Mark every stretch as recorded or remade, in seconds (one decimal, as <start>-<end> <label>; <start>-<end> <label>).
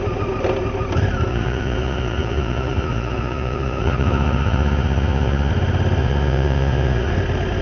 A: 0.0-1.3 recorded; 1.3-5.5 remade; 5.5-6.0 recorded; 6.0-7.1 remade; 7.1-7.6 recorded